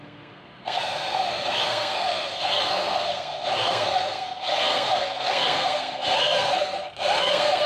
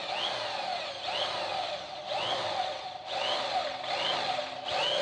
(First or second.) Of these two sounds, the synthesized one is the first